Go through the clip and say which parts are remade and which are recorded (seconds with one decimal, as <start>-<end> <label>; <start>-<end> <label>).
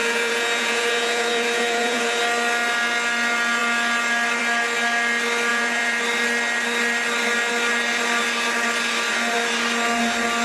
0.0-2.2 remade; 2.2-5.5 recorded; 5.5-6.0 remade; 6.0-10.4 recorded